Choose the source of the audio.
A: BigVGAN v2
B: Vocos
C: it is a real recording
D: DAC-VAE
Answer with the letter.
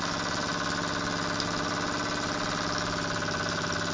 C